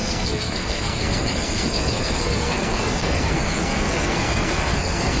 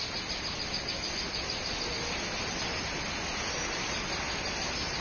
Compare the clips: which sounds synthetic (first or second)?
first